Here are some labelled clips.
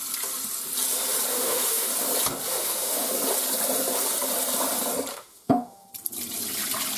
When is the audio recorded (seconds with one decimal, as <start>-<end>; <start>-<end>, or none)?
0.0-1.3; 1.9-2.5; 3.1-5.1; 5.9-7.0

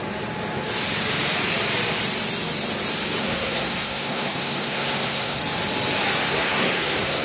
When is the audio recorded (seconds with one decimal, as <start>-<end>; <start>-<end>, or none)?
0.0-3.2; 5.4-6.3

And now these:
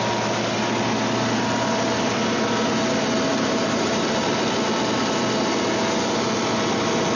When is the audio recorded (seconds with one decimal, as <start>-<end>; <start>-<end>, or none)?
0.0-3.3; 4.3-7.2